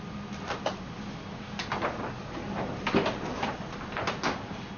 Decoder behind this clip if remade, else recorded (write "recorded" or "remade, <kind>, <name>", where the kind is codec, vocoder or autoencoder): recorded